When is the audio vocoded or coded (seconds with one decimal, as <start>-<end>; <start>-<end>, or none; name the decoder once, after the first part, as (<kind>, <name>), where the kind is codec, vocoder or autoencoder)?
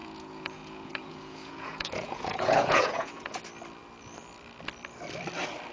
0.0-3.4 (vocoder, Vocos)